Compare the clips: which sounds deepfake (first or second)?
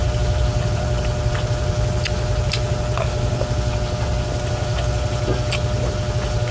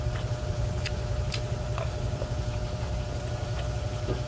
second